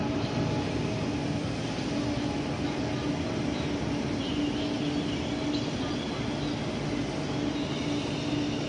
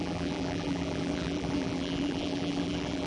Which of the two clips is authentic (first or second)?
first